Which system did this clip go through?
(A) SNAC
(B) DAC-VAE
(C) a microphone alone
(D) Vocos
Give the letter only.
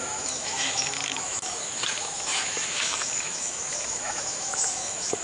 B